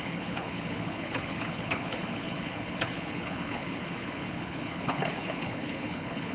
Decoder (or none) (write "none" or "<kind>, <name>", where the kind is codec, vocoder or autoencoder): codec, HILCodec